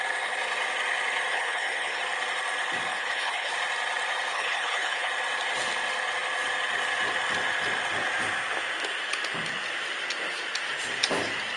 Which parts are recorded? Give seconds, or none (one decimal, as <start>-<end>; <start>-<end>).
0.0-1.3; 2.0-2.9; 3.5-4.3; 5.1-11.6